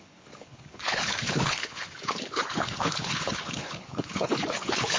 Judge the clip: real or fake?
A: fake